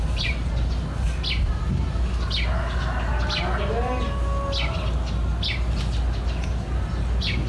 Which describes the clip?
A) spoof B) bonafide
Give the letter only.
B